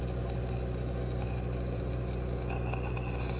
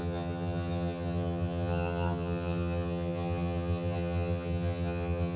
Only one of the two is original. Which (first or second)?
first